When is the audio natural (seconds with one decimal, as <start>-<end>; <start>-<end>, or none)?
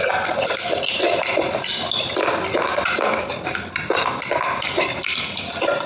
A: 1.0-1.6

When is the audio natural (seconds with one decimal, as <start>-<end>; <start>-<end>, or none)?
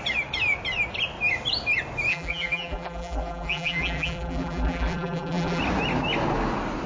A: 0.0-2.1; 5.6-6.9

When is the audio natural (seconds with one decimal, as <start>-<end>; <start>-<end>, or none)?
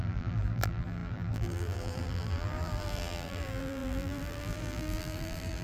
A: none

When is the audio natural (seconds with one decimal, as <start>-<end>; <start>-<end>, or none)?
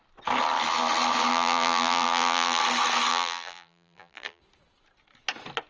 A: 0.0-1.3; 2.6-3.1; 4.4-5.7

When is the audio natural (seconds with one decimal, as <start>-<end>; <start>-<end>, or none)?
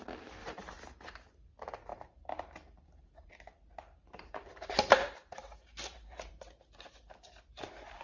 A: 0.0-0.4; 1.5-1.9; 3.3-4.0; 6.3-8.0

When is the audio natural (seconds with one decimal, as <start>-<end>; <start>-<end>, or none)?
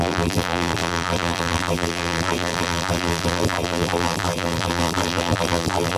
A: none